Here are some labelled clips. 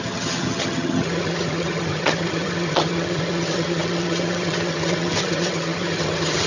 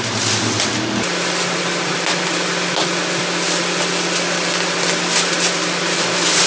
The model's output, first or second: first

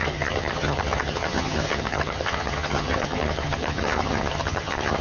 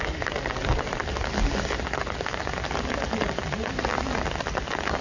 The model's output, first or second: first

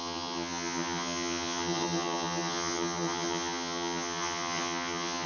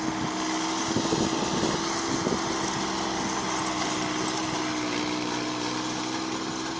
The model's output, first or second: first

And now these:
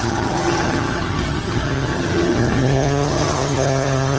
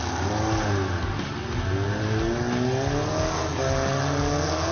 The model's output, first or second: first